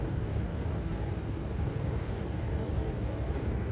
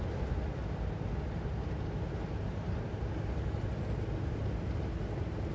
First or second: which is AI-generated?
first